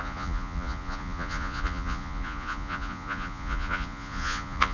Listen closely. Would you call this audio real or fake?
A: fake